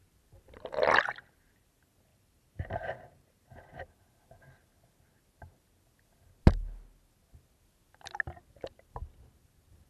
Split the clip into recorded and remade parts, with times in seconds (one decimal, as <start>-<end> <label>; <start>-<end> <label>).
0.0-2.1 recorded; 2.1-3.5 remade; 3.5-9.9 recorded